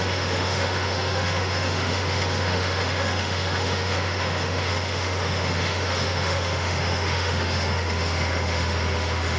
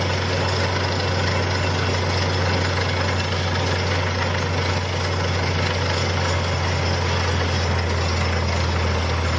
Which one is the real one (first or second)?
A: second